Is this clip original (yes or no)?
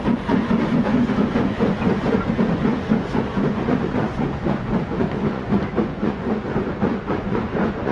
no